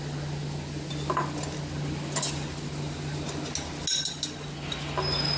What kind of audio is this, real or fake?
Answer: real